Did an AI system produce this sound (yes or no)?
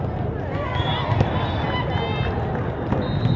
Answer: no